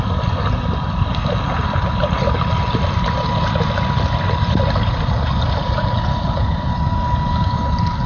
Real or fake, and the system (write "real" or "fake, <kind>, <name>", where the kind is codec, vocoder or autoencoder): real